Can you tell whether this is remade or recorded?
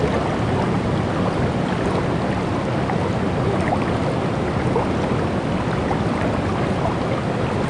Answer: recorded